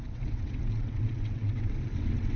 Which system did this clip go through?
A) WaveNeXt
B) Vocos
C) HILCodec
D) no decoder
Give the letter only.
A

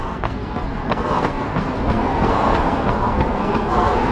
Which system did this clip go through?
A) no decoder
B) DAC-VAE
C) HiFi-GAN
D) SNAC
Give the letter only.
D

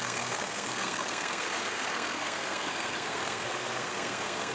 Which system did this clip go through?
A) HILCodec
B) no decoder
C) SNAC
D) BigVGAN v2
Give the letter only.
C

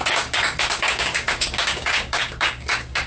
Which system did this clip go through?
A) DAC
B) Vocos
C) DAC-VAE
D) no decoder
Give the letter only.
A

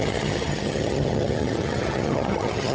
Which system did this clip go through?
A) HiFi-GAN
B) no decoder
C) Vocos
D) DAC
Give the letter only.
A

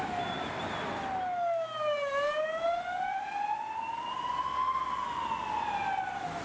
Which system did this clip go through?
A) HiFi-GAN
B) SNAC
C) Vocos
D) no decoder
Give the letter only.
D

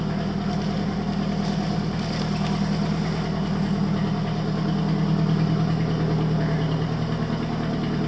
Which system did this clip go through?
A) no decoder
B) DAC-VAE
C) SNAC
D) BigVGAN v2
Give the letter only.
A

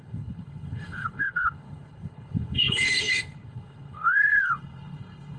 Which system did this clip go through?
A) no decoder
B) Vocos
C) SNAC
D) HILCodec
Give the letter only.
D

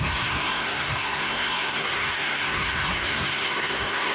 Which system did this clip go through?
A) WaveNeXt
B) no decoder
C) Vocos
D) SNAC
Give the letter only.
D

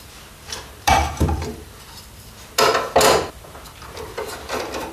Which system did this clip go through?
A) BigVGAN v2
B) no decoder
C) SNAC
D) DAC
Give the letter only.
A